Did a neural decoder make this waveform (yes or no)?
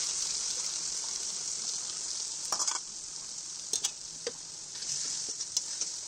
no